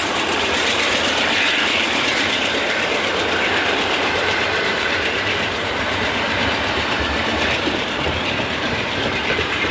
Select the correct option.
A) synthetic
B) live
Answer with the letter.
A